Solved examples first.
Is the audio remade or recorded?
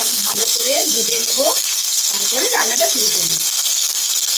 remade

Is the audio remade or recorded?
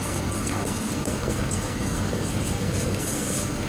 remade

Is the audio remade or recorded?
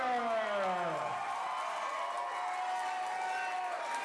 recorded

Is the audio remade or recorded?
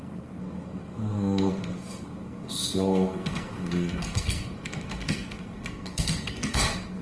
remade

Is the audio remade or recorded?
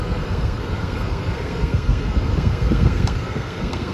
remade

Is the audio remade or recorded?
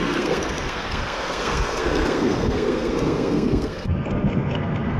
remade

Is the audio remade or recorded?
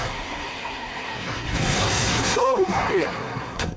remade